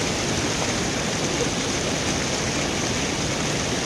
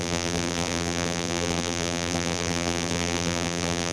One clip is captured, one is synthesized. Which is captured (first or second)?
first